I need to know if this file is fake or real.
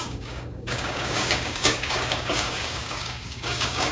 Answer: fake